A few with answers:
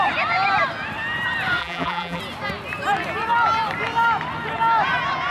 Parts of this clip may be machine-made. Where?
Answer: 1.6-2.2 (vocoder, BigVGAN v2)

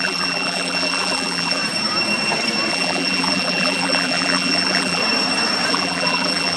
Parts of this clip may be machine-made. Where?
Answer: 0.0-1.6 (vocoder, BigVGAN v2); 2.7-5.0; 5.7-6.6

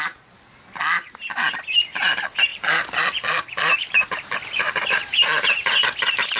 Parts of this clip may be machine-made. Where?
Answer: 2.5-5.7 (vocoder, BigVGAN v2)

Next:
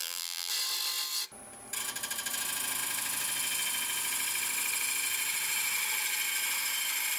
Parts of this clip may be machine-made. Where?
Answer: 0.0-0.5 (vocoder, BigVGAN v2)